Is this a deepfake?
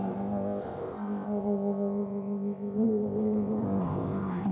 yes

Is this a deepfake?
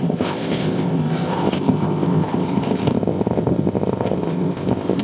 yes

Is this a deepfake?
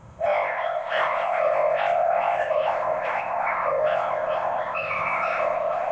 yes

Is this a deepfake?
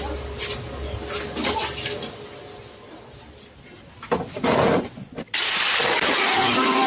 no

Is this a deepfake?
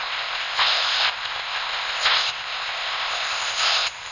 yes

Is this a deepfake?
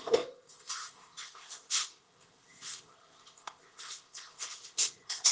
yes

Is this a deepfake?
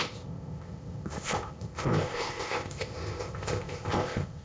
yes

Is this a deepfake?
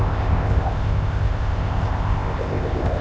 yes